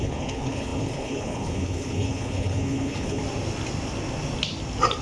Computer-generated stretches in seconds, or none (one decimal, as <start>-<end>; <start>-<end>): 0.0-3.2